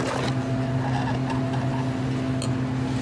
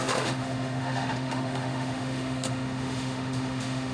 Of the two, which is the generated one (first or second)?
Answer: second